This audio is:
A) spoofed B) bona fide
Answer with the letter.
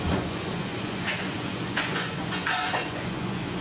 A